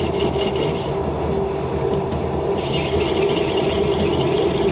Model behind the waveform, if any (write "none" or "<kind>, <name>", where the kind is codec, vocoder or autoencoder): none